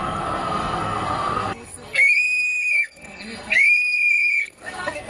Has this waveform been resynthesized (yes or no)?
yes